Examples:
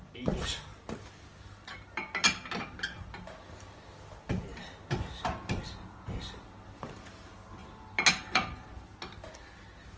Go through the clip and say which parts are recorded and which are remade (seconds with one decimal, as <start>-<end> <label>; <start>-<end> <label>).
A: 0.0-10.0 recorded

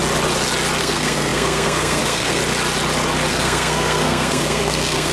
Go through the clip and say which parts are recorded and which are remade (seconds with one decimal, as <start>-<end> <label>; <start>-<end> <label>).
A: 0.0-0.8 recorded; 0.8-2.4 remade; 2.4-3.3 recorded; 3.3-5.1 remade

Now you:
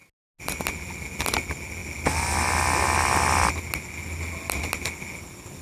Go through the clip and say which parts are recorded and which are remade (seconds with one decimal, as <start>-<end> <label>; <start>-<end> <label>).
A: 0.0-5.6 recorded